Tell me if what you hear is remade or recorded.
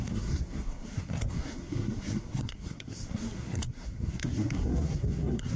remade